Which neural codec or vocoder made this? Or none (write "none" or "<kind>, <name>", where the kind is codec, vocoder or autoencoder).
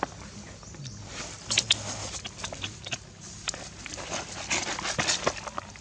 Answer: none